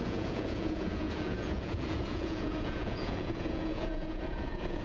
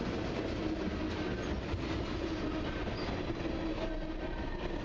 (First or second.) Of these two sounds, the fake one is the first